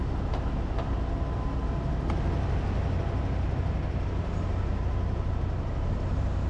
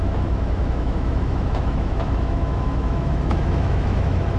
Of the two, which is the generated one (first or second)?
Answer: second